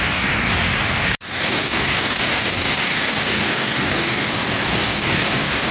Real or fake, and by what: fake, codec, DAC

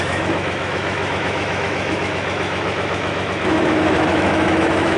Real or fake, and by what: fake, autoencoder, DAC-VAE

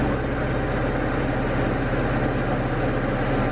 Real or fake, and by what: real